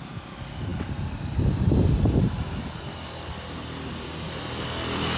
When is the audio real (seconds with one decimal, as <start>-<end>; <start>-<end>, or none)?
0.0-5.2